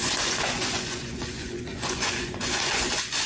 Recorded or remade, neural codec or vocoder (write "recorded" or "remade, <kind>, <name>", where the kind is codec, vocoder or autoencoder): remade, vocoder, Vocos